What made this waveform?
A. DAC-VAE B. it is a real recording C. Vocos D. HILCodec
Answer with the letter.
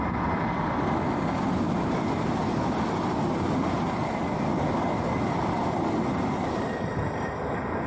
B